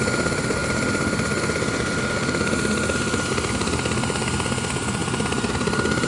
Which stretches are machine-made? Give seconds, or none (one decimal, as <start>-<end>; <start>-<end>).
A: none